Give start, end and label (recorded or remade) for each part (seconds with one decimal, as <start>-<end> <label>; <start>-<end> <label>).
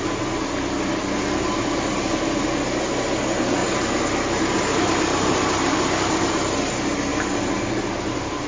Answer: 0.0-8.5 recorded